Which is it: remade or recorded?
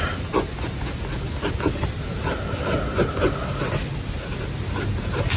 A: recorded